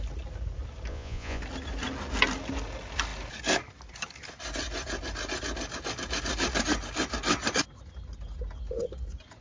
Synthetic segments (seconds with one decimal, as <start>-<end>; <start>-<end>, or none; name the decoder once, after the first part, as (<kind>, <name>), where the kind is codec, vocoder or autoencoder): 0.9-1.4 (vocoder, Vocos)